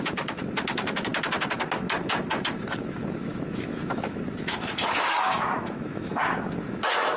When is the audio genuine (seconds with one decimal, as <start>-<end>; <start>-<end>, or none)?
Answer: 1.1-2.8